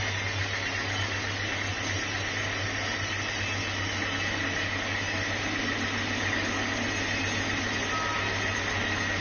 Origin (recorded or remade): recorded